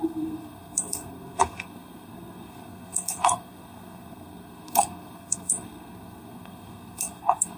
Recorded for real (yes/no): no